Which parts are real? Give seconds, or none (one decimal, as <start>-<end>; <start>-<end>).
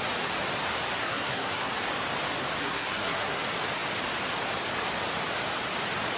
0.0-1.0; 1.7-2.6; 3.4-6.2